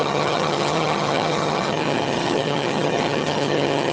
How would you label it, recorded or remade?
remade